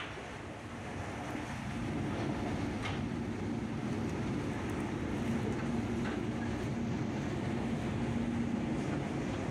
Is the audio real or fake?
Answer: real